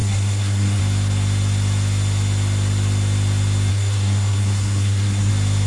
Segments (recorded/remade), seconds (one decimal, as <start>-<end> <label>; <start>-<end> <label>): 0.0-0.8 remade; 0.8-3.7 recorded; 3.7-5.3 remade; 5.3-5.7 recorded